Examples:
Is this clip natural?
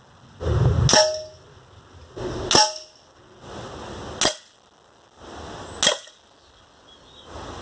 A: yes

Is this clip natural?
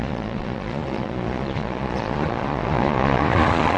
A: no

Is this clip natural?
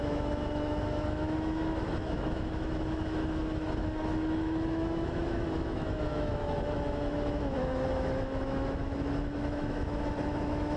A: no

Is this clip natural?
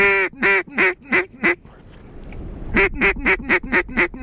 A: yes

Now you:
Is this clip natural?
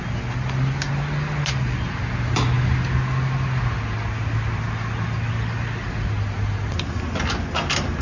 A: yes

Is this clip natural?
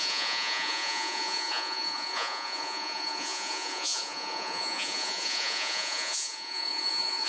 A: no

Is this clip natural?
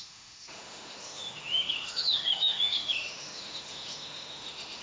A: no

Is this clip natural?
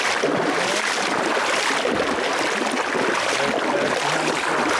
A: yes